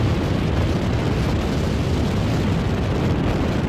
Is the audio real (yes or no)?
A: yes